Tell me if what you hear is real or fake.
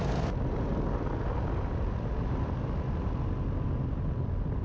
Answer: real